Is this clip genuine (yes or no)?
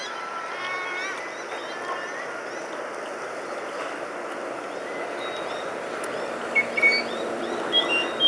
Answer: yes